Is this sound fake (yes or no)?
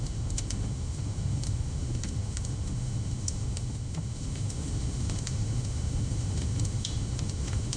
yes